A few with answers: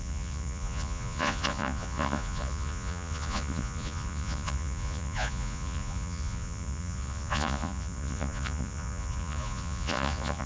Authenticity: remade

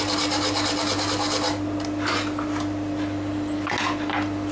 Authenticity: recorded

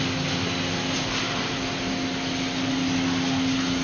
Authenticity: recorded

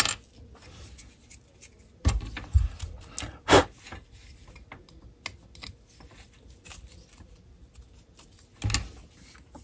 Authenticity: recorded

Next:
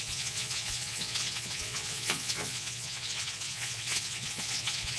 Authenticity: remade